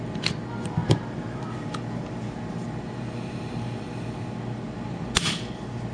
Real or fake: real